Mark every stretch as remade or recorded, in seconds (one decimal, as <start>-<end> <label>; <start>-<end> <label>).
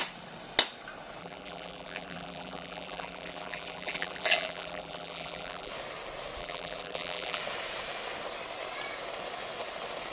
0.0-1.2 recorded; 1.2-5.7 remade; 5.7-6.4 recorded; 6.4-7.4 remade; 7.4-10.1 recorded